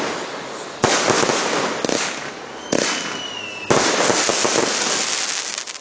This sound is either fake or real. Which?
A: real